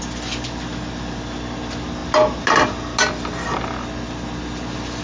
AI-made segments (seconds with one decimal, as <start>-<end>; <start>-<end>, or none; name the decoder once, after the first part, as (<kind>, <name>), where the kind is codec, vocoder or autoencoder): none